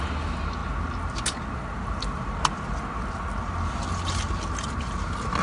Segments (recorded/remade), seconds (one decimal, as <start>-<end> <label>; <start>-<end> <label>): 0.0-5.4 recorded